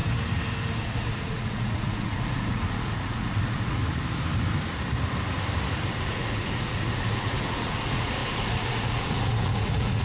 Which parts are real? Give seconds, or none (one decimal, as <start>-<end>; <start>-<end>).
0.0-0.8; 3.8-5.9